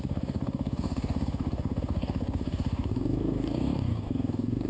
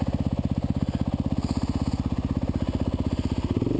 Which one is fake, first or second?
first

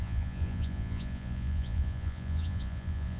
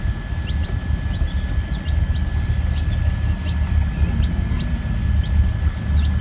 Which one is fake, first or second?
first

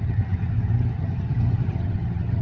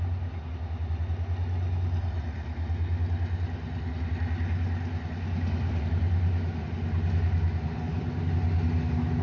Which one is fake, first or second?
first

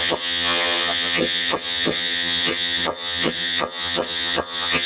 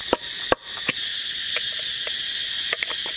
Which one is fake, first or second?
first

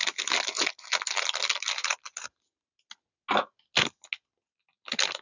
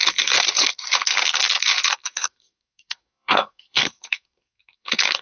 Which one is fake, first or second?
second